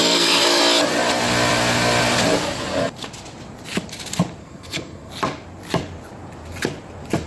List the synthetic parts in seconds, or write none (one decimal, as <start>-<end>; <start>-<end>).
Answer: 0.0-0.6; 4.4-5.1